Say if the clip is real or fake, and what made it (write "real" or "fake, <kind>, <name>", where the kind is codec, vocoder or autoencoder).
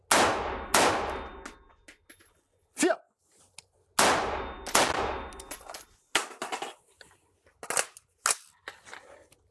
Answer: real